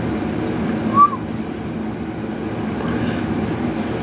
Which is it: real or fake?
real